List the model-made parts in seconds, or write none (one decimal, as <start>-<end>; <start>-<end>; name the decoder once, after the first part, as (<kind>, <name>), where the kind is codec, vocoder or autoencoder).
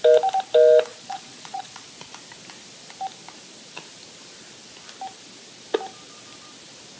0.9-1.9 (vocoder, Vocos)